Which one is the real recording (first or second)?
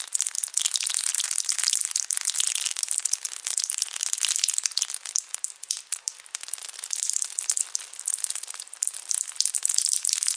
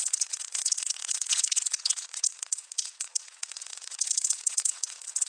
first